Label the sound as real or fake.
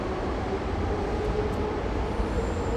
real